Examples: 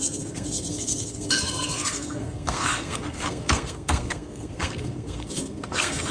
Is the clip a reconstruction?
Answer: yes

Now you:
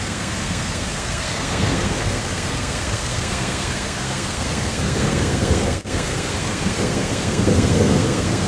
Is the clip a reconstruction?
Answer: yes